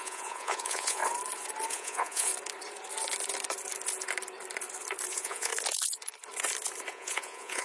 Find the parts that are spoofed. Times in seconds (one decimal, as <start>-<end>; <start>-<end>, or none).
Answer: 0.0-1.0; 1.7-2.3; 5.1-5.5; 6.9-7.6